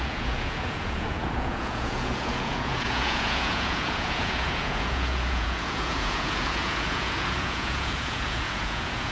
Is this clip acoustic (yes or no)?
no